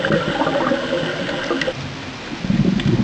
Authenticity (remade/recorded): recorded